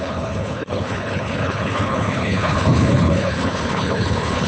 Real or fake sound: fake